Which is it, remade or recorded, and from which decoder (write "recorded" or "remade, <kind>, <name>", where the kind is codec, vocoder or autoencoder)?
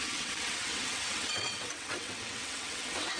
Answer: remade, vocoder, WaveNeXt